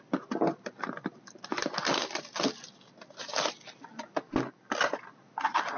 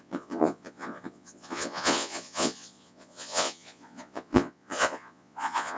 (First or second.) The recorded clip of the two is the first